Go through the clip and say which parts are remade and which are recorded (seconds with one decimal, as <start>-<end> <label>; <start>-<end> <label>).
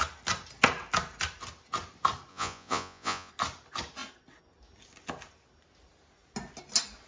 0.0-2.3 recorded; 2.3-3.3 remade; 3.3-7.1 recorded